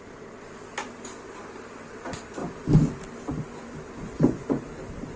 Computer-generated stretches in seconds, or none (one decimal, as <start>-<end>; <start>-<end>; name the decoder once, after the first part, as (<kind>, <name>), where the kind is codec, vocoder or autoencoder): 4.0-4.6 (vocoder, Vocos)